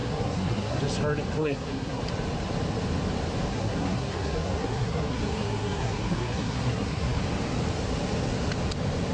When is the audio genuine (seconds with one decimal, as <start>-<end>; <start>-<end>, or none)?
0.8-1.4; 2.0-3.5; 7.2-9.1